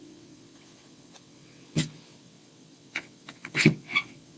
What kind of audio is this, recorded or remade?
remade